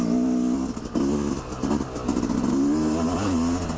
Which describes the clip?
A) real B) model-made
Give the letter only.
A